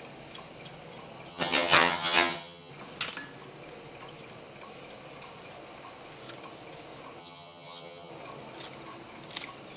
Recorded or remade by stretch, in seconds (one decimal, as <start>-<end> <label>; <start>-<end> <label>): 0.0-1.3 recorded; 1.3-2.7 remade; 2.7-7.2 recorded; 7.2-8.1 remade; 8.1-9.8 recorded